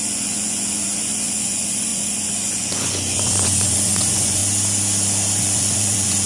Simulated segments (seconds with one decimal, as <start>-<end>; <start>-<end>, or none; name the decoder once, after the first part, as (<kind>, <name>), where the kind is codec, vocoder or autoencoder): 0.0-4.4 (vocoder, Vocos); 5.4-6.3